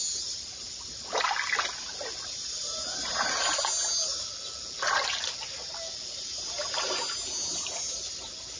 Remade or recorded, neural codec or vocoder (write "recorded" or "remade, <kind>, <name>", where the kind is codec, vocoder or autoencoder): recorded